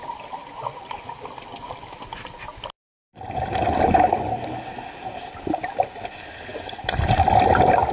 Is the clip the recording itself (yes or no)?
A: yes